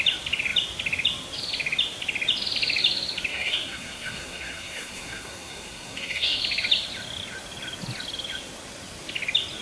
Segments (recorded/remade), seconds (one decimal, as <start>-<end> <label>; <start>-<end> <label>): 0.0-3.3 recorded; 3.3-6.4 remade; 6.4-9.6 recorded